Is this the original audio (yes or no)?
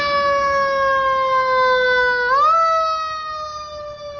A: yes